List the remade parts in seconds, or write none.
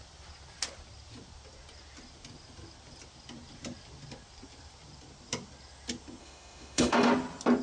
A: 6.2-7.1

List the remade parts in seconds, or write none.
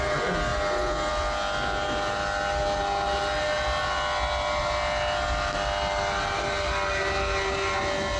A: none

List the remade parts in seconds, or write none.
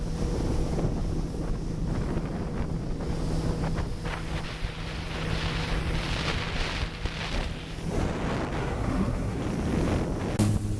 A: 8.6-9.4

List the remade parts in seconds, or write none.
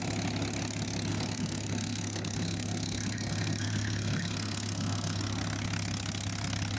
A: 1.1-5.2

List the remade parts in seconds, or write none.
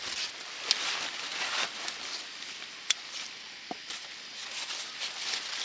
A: none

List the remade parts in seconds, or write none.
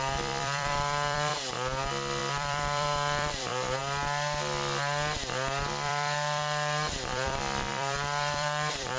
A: 0.0-1.3; 2.2-3.8; 5.7-9.0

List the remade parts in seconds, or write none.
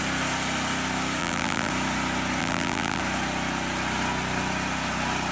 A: 1.2-1.7; 2.4-3.0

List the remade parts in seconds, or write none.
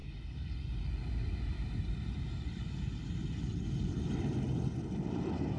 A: none